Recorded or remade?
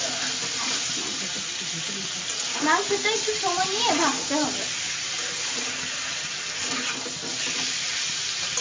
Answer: recorded